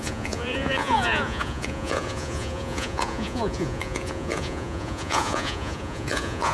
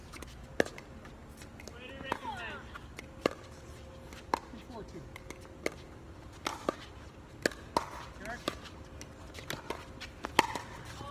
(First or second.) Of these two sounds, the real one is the second